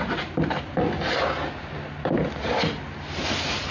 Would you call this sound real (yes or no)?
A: yes